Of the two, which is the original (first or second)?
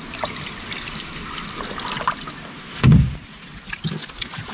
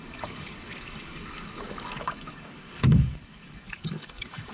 first